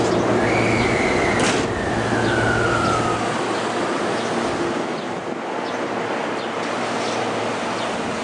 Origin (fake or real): real